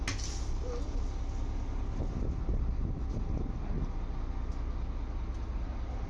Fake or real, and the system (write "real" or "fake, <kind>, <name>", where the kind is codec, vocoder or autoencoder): real